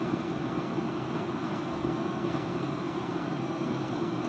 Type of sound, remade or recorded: remade